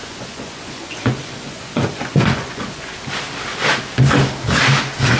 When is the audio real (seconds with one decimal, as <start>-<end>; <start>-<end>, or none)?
2.9-5.2